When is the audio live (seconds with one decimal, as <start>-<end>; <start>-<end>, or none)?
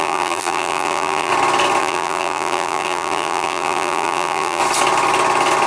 1.3-1.8; 4.6-5.7